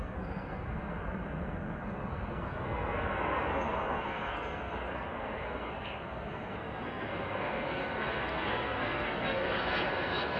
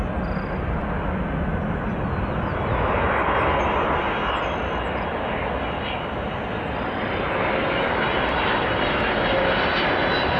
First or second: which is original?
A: second